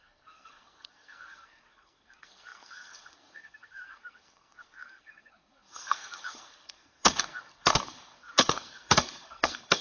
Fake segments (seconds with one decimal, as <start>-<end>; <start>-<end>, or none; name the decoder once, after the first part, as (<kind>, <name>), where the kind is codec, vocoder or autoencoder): 0.0-9.8 (codec, SNAC)